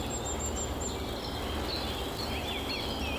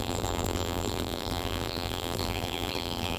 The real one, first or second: first